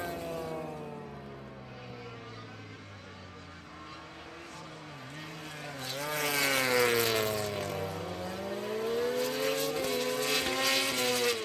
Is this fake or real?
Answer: real